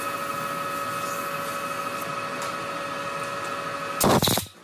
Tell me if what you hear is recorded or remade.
recorded